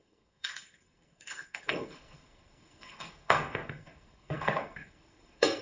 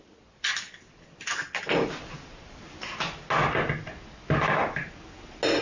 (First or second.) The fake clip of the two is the first